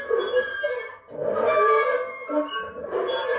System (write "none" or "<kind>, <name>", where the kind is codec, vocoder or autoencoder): vocoder, BigVGAN v2